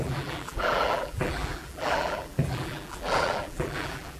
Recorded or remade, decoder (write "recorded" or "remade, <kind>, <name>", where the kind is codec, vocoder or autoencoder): remade, vocoder, BigVGAN v2